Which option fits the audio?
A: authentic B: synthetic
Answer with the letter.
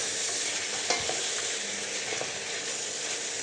A